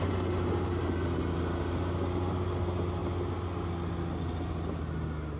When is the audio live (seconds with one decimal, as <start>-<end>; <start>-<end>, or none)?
0.0-5.4